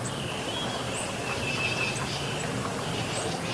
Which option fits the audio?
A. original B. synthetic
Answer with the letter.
A